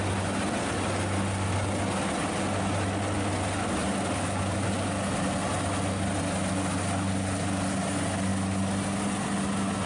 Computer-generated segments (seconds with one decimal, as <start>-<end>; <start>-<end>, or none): none